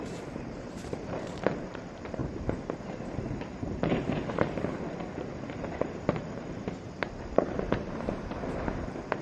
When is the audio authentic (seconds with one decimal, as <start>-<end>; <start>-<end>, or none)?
none